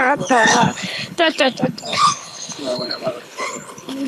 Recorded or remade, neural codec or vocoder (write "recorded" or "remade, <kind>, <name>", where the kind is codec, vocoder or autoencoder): remade, codec, HILCodec